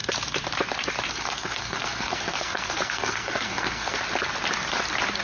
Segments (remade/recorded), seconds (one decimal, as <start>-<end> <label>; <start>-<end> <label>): 0.0-1.1 recorded; 1.1-4.0 remade; 4.0-5.2 recorded